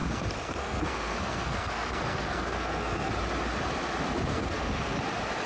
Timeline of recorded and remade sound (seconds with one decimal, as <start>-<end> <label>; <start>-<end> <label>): 0.0-3.1 remade; 3.1-4.3 recorded; 4.3-5.0 remade; 5.0-5.5 recorded